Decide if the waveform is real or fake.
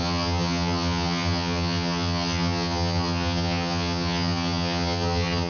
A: fake